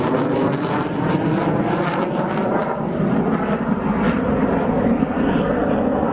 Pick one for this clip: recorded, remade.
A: recorded